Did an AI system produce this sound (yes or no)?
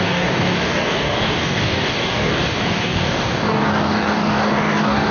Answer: yes